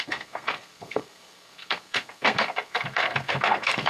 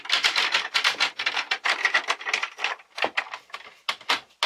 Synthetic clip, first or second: first